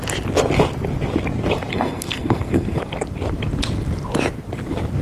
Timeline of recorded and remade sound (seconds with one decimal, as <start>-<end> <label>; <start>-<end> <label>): 0.0-1.7 recorded; 1.7-2.8 remade; 2.8-5.0 recorded